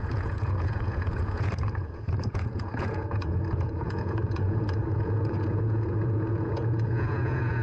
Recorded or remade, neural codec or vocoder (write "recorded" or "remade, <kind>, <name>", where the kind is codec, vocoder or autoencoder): remade, vocoder, Vocos